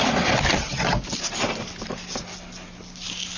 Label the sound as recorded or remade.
recorded